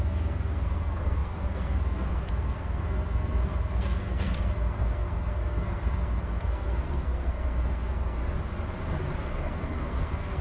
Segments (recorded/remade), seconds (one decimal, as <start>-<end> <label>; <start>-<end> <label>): 0.0-8.2 remade; 8.2-9.2 recorded; 9.2-10.4 remade